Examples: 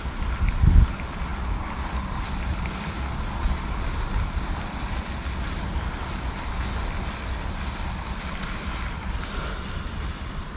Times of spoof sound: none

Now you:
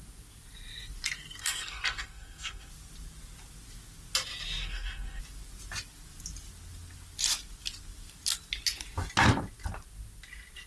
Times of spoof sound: 1.4-2.7; 4.6-5.2

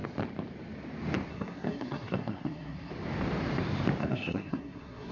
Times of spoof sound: 1.3-2.9; 4.0-5.1

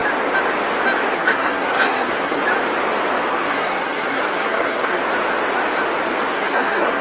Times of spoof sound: 1.1-2.4; 3.3-5.0; 6.3-7.0

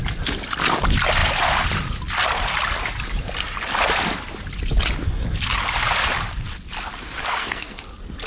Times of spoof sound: 7.2-7.8

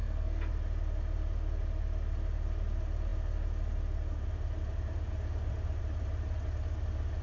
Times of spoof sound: 0.0-0.5

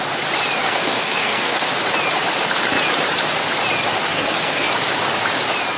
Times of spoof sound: 0.6-1.7; 4.1-4.7